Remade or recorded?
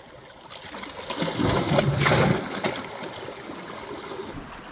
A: recorded